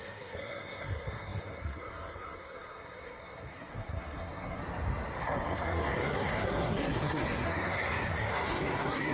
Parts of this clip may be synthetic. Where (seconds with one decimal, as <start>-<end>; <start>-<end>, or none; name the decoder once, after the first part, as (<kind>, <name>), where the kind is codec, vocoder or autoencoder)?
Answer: 0.0-4.6 (codec, SNAC); 5.2-9.1